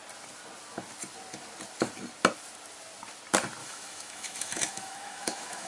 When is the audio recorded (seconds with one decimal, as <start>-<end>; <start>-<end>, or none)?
0.0-3.6